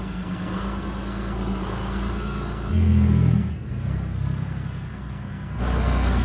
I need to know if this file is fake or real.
fake